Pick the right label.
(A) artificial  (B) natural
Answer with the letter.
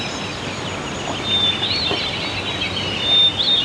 B